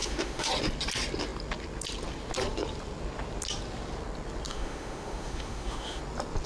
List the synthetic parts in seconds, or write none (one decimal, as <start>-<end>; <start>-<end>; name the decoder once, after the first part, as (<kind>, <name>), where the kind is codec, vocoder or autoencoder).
0.0-0.5 (autoencoder, DAC-VAE); 4.5-6.0